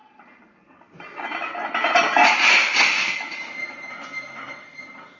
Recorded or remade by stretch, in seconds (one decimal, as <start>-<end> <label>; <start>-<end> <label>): 0.0-5.2 recorded